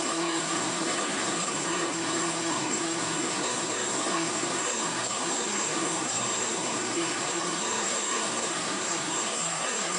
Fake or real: fake